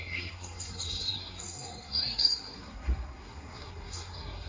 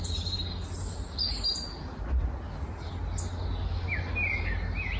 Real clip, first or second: second